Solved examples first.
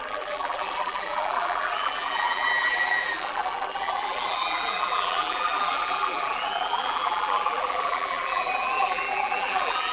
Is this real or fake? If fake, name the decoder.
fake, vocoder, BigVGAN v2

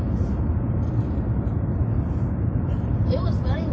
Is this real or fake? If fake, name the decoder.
real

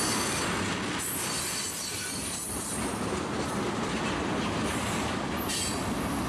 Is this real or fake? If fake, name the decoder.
real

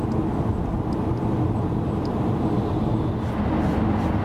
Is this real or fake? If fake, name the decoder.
real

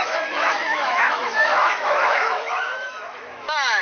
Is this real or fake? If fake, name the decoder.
fake, autoencoder, DAC-VAE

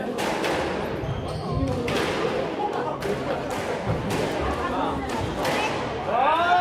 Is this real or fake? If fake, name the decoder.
real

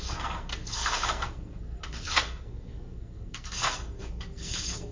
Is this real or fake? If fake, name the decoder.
fake, codec, SNAC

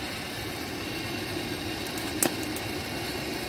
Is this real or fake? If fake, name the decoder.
real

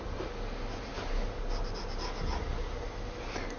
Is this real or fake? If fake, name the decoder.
real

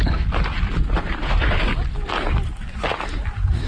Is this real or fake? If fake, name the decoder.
real